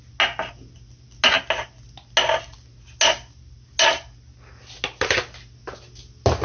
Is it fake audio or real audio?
real